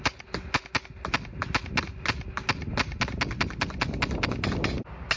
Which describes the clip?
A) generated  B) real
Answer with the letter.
B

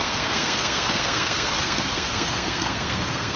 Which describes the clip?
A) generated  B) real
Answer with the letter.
A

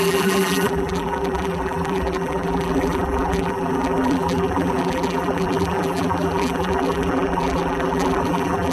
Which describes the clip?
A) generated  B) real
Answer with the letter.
A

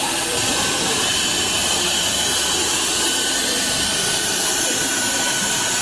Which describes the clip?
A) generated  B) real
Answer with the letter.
A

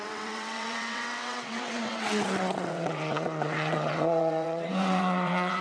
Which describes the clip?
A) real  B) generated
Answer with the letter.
B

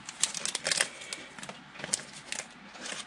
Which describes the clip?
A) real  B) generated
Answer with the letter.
A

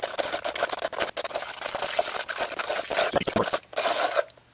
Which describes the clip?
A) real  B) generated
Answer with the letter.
A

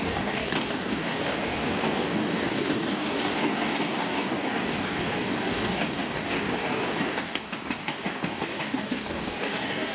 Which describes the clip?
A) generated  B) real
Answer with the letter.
A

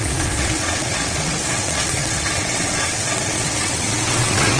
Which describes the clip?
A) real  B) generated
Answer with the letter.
B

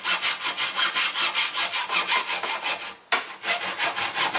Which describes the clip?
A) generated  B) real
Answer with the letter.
B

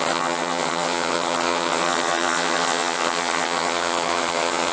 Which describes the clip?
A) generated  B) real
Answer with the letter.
A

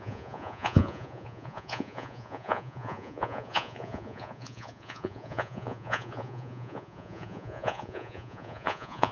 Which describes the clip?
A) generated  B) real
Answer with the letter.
A